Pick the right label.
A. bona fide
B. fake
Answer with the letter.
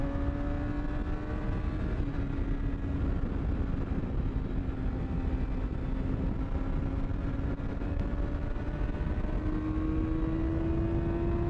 A